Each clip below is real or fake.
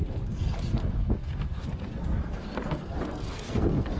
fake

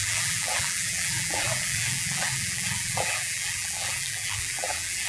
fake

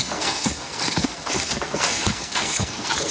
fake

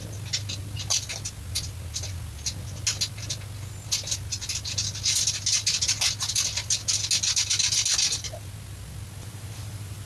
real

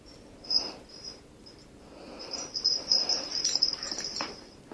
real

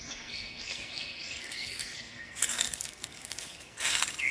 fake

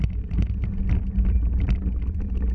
real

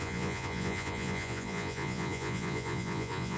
fake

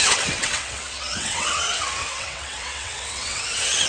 fake